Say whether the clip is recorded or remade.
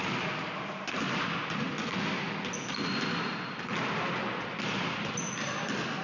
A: recorded